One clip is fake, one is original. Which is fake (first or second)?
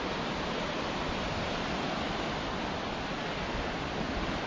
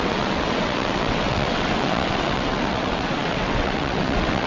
second